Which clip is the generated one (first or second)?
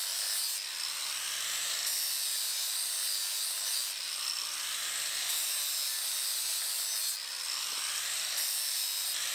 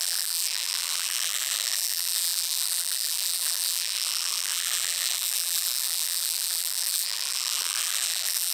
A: second